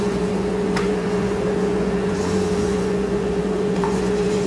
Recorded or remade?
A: remade